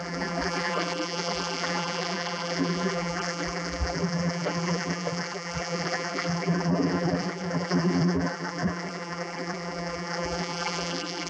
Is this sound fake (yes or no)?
yes